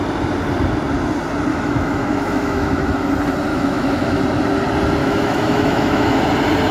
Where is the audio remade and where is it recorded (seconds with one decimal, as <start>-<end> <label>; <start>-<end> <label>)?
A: 0.0-1.5 recorded; 1.5-3.0 remade; 3.0-3.5 recorded; 3.5-4.2 remade; 4.2-5.0 recorded; 5.0-6.2 remade; 6.2-6.7 recorded